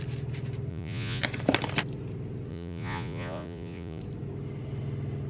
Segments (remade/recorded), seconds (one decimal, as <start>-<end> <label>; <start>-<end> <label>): 0.0-0.7 recorded; 0.7-1.2 remade; 1.2-2.5 recorded; 2.5-4.0 remade; 4.0-5.3 recorded